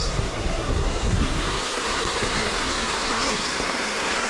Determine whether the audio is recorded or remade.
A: remade